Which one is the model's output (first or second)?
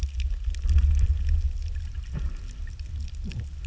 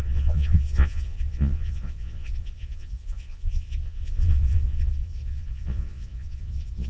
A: second